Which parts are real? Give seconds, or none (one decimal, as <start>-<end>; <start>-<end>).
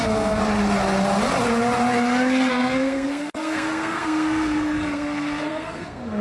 0.4-2.5